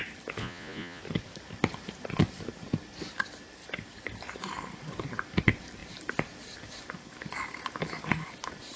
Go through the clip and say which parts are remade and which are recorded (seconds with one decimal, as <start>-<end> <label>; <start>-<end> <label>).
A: 0.0-0.4 recorded; 0.4-1.0 remade; 1.0-8.8 recorded